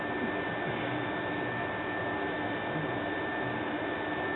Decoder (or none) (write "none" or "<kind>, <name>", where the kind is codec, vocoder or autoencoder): none